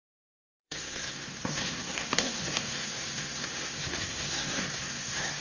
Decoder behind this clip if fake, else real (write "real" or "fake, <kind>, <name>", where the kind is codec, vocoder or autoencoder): fake, codec, SNAC